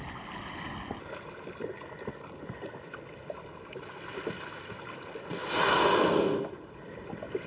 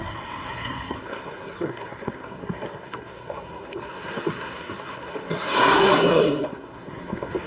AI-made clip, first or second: second